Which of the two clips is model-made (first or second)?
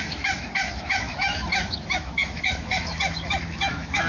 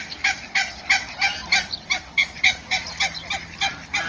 first